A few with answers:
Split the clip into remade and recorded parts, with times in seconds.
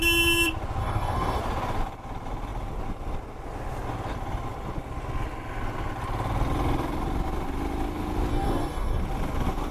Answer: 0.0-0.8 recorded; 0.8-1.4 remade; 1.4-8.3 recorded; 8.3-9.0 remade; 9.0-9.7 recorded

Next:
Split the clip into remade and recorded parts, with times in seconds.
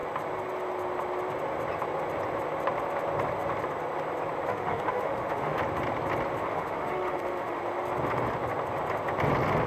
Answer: 0.0-4.5 recorded; 4.5-5.6 remade; 5.6-6.4 recorded; 6.4-7.6 remade; 7.6-9.7 recorded